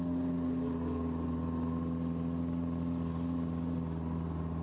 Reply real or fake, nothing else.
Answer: real